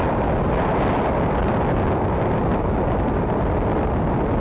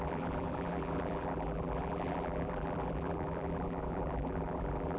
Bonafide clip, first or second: first